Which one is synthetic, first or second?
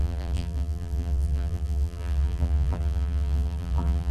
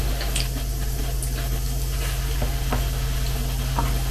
first